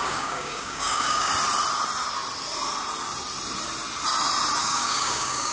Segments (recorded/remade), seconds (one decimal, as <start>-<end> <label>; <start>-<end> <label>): 0.0-1.3 remade; 1.3-4.6 recorded; 4.6-5.5 remade